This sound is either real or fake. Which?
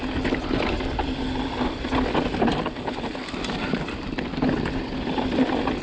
real